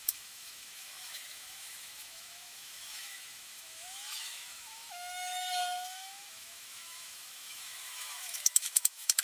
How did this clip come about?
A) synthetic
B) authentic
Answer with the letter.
A